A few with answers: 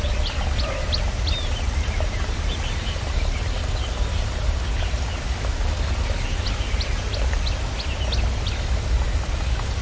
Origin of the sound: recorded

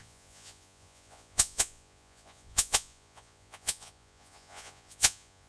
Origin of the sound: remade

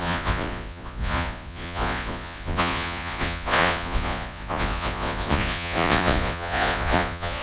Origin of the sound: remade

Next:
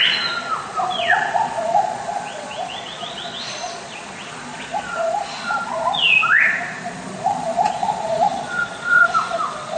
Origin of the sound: remade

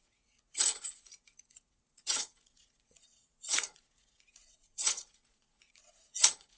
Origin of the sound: remade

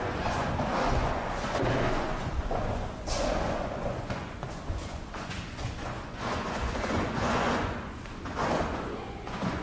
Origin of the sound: remade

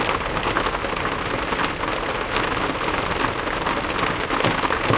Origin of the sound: recorded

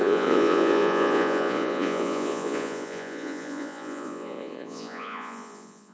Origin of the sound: remade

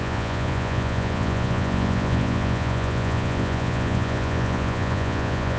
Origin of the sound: remade